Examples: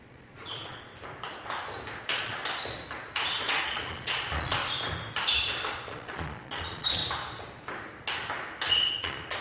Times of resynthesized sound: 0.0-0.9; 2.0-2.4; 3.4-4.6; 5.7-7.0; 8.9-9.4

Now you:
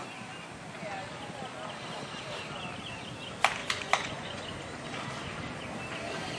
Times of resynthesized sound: 3.6-4.6